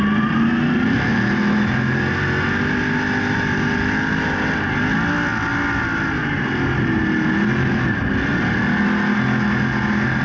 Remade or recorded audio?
recorded